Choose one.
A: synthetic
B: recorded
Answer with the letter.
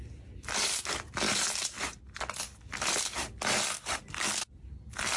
B